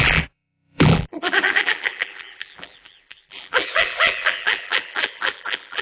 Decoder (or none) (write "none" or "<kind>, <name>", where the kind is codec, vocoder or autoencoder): vocoder, BigVGAN v2